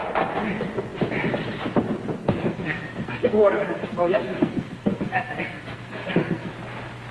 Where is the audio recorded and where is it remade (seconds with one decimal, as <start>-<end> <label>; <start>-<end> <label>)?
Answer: 0.0-2.2 recorded; 2.2-6.5 remade; 6.5-7.1 recorded